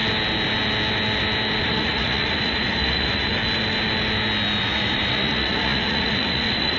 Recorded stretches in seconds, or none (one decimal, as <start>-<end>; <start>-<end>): 0.0-1.6; 3.3-4.6